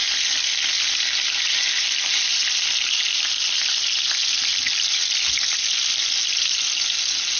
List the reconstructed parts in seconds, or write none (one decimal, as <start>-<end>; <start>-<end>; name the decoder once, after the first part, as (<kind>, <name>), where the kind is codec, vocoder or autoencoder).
none